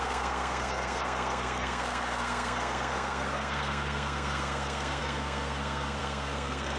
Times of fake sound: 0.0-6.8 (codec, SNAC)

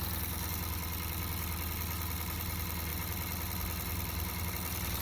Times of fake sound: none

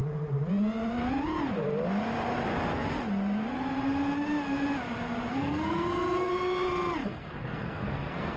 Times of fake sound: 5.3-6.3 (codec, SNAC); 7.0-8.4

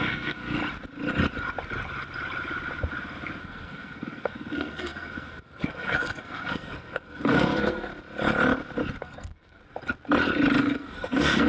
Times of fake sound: 0.0-0.6 (codec, SNAC); 3.4-7.9; 9.0-9.6; 10.6-11.5

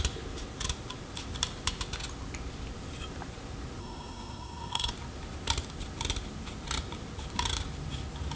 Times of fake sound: 3.8-4.9 (codec, SNAC)